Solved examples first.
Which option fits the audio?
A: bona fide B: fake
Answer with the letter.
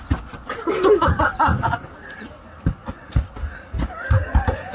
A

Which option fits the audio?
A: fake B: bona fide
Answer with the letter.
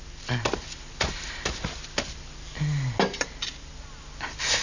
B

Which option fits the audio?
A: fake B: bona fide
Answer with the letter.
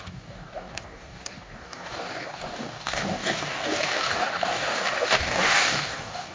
A